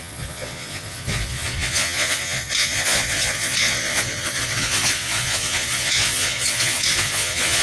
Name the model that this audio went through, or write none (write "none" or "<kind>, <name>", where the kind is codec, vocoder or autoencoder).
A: vocoder, Vocos